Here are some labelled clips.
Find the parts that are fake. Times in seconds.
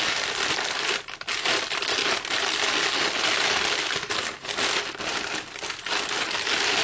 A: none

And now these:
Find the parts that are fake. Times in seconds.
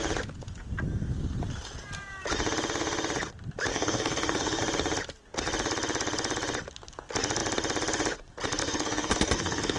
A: 3.7-4.6 (codec, SNAC); 8.6-9.8